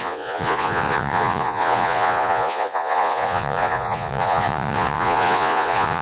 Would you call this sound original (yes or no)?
no